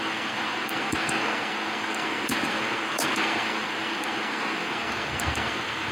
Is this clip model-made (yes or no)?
yes